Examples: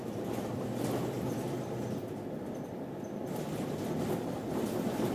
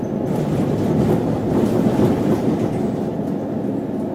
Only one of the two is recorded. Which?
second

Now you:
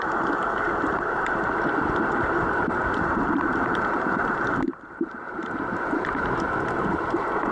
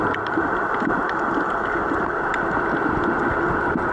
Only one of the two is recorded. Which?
second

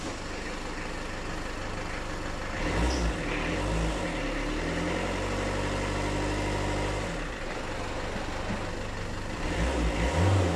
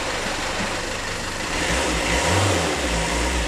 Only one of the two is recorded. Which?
first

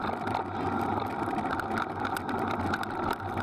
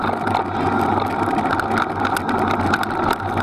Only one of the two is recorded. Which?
second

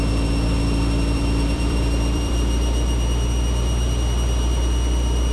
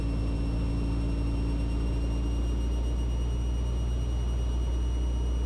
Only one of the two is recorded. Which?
second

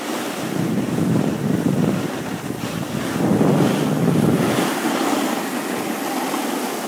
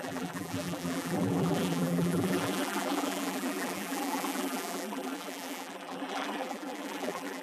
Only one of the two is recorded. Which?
first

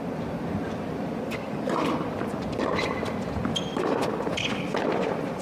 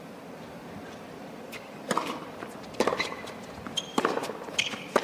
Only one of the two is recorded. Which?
first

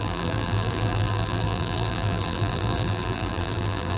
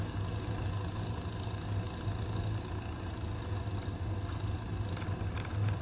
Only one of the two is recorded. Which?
second